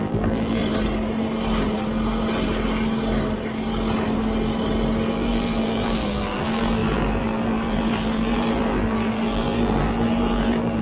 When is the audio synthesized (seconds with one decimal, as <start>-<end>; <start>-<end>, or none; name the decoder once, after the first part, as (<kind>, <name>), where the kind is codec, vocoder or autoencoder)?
0.0-0.6 (vocoder, BigVGAN v2); 5.1-10.8